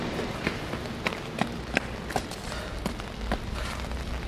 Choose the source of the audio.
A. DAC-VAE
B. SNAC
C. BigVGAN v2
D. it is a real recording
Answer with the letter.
D